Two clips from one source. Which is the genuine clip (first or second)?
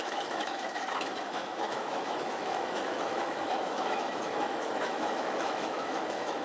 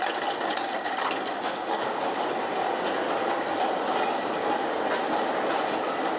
second